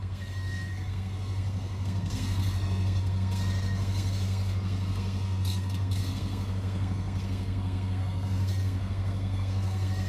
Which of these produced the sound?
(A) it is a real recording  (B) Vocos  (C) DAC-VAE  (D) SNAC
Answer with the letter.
D